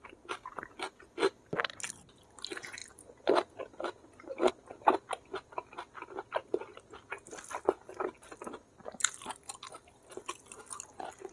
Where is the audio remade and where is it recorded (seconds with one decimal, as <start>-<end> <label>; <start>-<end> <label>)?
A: 0.0-2.8 recorded; 2.8-4.5 remade; 4.5-11.3 recorded

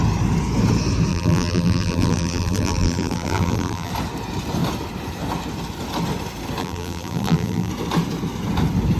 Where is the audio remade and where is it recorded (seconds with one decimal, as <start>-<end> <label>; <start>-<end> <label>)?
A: 0.0-1.1 recorded; 1.1-3.9 remade; 3.9-6.6 recorded; 6.6-7.7 remade; 7.7-9.0 recorded

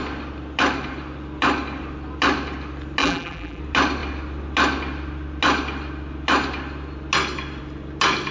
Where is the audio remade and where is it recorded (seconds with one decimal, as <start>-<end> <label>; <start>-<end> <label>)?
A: 0.0-3.0 recorded; 3.0-3.6 remade; 3.6-8.3 recorded

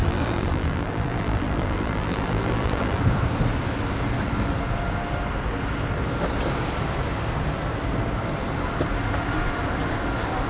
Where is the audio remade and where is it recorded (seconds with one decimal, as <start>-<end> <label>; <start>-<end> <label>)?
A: 0.0-3.0 remade; 3.0-10.5 recorded